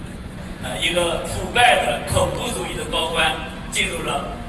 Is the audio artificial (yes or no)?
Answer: yes